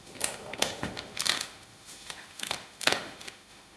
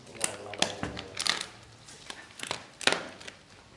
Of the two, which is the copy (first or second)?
first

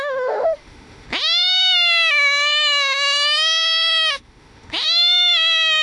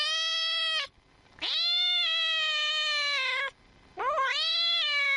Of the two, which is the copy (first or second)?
first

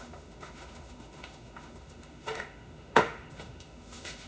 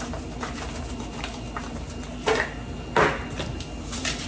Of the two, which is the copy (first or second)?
first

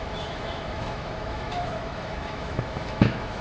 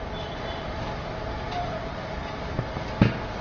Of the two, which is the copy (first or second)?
first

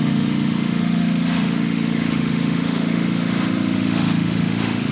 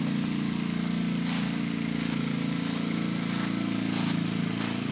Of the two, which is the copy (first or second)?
first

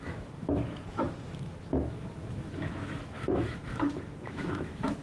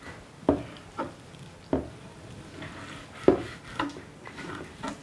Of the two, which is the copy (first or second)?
first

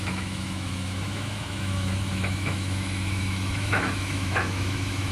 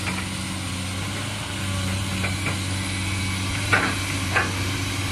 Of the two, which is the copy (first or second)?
first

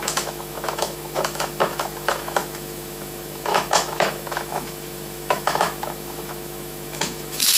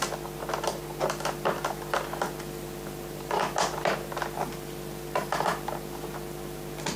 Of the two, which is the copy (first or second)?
first